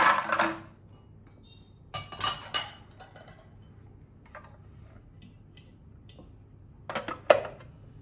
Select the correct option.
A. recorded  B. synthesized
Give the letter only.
A